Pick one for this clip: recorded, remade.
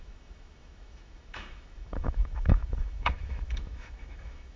remade